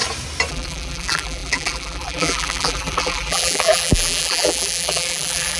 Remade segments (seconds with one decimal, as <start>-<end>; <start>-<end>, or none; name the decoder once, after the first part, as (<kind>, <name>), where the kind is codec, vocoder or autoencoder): 0.5-5.6 (vocoder, BigVGAN v2)